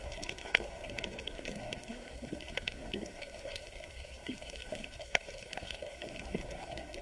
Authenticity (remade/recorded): remade